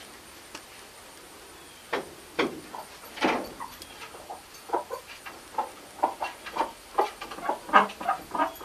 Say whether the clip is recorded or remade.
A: recorded